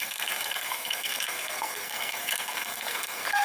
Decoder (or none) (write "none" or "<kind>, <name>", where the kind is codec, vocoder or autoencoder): codec, SNAC